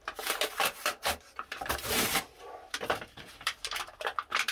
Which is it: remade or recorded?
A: remade